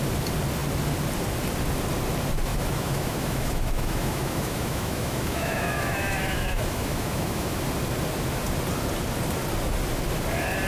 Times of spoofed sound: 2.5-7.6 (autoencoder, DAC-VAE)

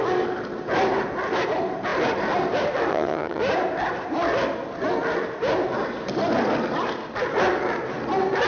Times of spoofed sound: 2.9-3.4 (vocoder, HiFi-GAN)

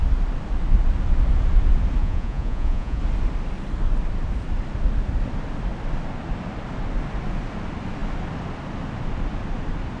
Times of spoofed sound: 2.0-3.0 (vocoder, Vocos)